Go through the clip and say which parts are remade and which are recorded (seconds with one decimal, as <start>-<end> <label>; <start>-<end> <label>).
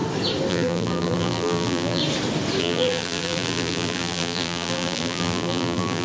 0.0-0.5 recorded; 0.5-2.0 remade; 2.0-2.6 recorded; 2.6-6.0 remade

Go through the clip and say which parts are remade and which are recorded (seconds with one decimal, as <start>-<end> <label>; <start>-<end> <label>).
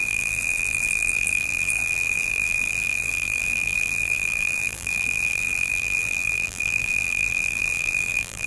0.0-8.5 remade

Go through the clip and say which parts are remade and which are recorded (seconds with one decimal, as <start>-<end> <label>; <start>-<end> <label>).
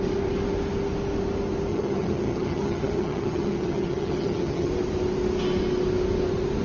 0.0-1.7 recorded; 1.7-4.7 remade; 4.7-6.6 recorded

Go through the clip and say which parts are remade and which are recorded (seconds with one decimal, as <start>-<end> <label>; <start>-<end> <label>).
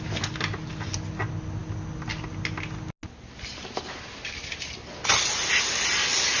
0.0-6.4 recorded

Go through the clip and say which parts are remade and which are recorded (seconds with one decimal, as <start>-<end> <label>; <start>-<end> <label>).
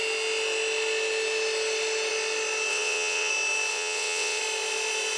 0.0-2.7 recorded; 2.7-3.3 remade; 3.3-3.7 recorded; 3.7-4.4 remade; 4.4-5.2 recorded